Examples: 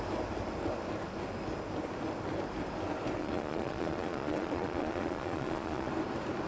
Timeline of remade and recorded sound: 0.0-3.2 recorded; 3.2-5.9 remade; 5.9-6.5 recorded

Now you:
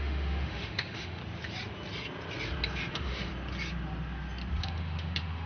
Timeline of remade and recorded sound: 0.0-1.2 remade; 1.2-2.9 recorded; 2.9-3.3 remade; 3.3-4.6 recorded; 4.6-5.5 remade

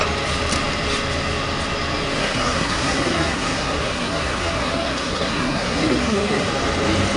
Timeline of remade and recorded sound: 0.0-2.2 recorded; 2.2-6.5 remade; 6.5-7.2 recorded

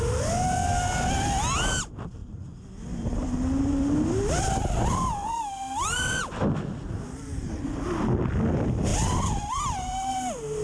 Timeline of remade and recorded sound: 0.0-10.6 recorded

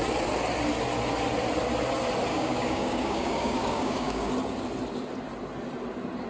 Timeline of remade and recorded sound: 0.0-2.3 recorded; 2.3-4.3 remade; 4.3-6.3 recorded

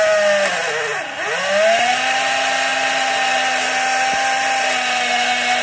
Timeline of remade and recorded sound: 0.0-5.6 recorded